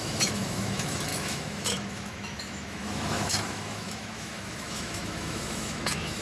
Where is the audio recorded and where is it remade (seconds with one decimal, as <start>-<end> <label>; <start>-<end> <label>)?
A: 0.0-6.2 remade